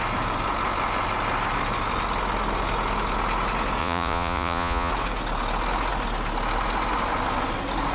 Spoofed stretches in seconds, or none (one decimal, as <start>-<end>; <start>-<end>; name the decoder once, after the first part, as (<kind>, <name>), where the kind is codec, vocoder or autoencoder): 3.8-4.9 (vocoder, Vocos)